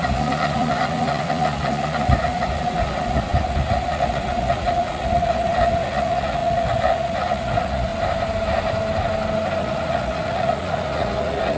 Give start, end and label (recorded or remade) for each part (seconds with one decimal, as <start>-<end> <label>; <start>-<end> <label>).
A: 0.0-7.9 remade; 7.9-9.6 recorded; 9.6-11.6 remade